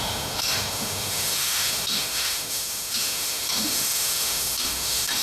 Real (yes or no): no